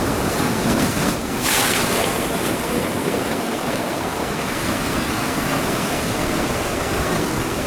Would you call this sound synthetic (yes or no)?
yes